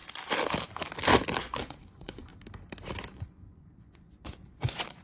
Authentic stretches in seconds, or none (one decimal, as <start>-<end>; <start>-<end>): 0.0-1.4; 2.3-3.1